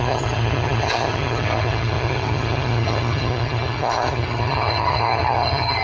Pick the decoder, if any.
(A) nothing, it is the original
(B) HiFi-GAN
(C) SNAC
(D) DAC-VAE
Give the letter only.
B